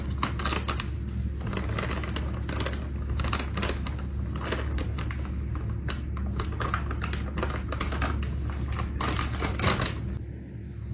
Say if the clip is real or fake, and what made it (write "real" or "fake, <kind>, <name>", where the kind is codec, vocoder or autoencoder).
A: real